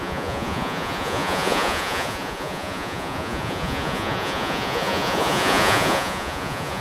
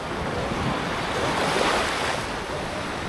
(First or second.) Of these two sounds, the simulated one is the first